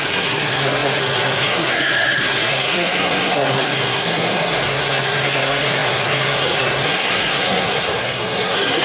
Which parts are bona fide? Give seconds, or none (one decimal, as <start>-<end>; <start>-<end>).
none